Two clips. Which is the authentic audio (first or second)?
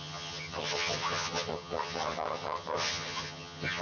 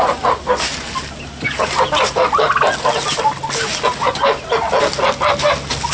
second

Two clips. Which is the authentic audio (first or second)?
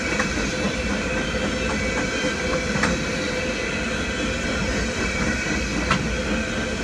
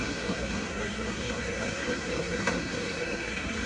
first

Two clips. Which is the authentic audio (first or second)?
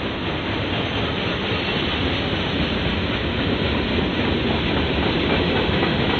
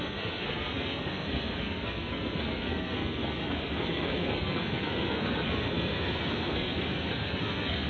first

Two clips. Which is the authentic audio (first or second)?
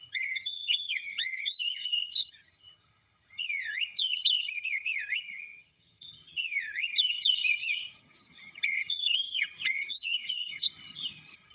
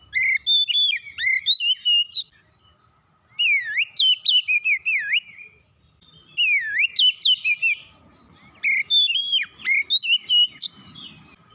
second